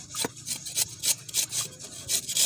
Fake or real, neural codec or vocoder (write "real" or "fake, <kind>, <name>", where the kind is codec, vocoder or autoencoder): real